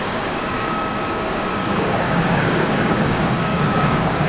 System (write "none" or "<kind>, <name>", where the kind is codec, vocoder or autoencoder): codec, DAC